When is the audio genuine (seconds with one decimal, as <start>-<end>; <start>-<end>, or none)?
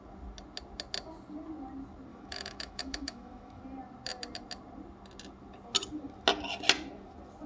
0.0-2.1; 3.6-7.5